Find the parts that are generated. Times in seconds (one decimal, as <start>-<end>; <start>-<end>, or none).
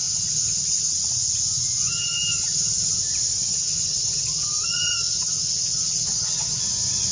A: 0.0-0.9; 1.8-3.0; 3.5-6.6